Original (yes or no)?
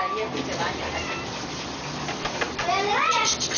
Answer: yes